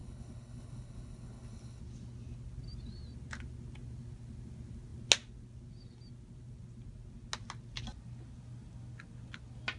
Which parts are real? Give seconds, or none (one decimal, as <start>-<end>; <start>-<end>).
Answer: 1.8-9.8